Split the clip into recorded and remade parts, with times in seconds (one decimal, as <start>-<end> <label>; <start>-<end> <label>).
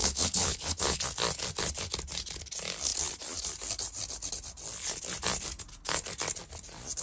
0.0-1.0 remade; 1.0-7.0 recorded